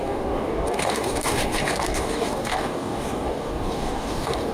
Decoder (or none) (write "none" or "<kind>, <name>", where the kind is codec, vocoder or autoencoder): codec, DAC